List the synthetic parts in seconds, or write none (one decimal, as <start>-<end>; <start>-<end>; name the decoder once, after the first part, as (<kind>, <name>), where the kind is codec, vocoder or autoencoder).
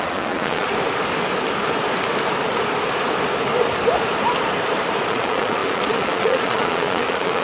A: 0.0-0.7 (vocoder, Vocos); 5.1-7.4